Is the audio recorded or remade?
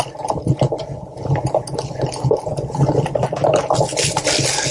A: recorded